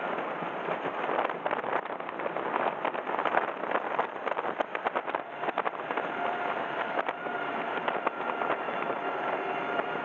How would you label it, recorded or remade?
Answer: remade